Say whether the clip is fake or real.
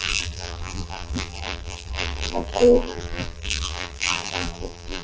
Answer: fake